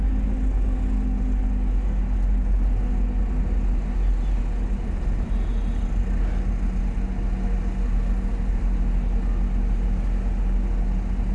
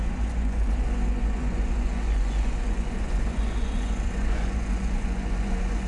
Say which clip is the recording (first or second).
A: first